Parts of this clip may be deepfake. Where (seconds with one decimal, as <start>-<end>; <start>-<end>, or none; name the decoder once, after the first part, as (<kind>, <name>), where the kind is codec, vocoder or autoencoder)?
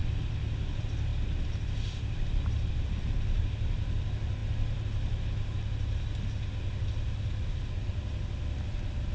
none